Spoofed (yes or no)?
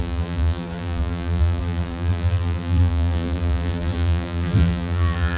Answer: yes